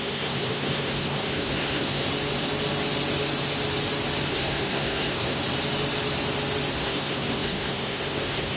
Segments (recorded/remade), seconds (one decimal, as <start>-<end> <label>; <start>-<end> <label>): 0.0-2.1 remade; 2.1-4.3 recorded; 4.3-5.4 remade; 5.4-6.7 recorded; 6.7-8.6 remade